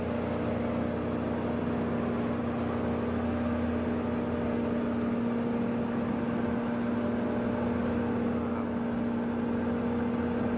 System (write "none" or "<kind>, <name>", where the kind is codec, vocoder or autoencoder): none